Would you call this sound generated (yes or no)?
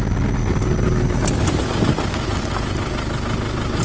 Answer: no